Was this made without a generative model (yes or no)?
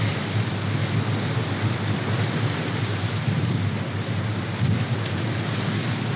yes